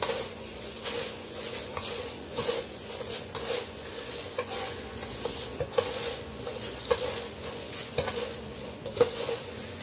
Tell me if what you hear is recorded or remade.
remade